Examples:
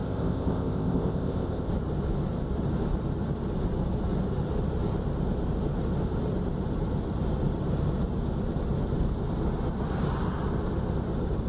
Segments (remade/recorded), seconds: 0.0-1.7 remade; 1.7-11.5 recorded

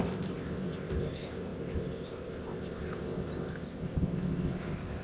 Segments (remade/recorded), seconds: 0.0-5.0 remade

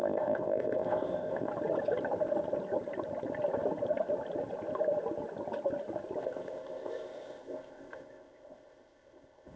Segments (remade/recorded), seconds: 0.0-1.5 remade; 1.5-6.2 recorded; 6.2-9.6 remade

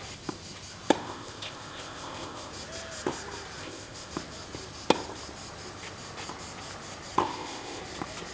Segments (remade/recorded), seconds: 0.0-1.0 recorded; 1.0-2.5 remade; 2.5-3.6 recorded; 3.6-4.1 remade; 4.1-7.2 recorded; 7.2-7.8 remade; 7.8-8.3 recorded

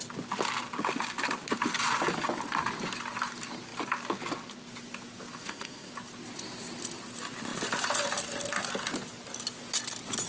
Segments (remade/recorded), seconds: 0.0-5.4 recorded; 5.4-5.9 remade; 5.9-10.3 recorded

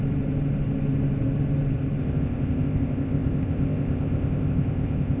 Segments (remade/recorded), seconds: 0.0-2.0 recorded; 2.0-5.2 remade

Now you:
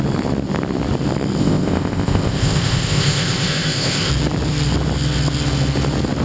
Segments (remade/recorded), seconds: 0.0-1.4 recorded; 1.4-4.1 remade; 4.1-6.2 recorded

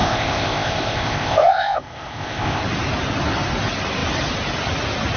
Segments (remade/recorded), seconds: 0.0-2.6 remade; 2.6-5.2 recorded